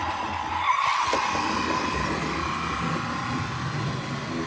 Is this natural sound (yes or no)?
yes